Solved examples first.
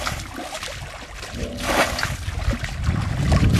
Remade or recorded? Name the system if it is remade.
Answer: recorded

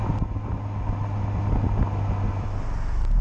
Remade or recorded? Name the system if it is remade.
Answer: recorded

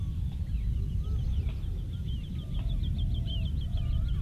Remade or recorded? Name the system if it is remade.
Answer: recorded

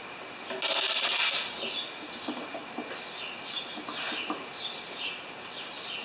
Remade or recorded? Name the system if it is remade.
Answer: recorded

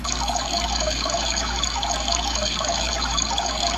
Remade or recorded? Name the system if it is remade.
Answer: remade, codec, DAC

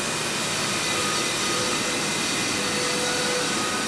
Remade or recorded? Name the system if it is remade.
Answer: recorded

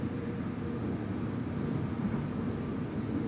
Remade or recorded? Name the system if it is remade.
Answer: recorded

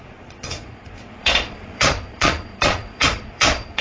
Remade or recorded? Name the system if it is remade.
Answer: remade, vocoder, Vocos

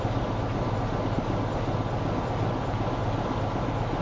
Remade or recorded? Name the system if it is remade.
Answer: recorded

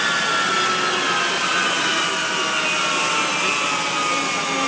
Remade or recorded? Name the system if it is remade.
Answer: recorded